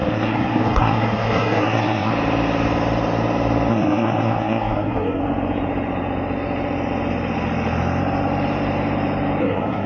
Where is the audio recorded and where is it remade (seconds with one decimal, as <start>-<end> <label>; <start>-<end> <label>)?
0.0-2.1 remade; 2.1-3.7 recorded; 3.7-5.2 remade; 5.2-9.4 recorded; 9.4-9.9 remade